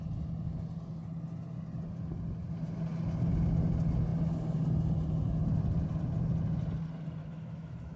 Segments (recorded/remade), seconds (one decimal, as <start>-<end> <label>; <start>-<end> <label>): 0.0-7.2 recorded; 7.2-8.0 remade